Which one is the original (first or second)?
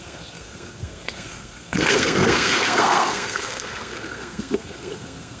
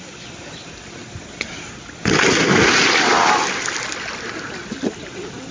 second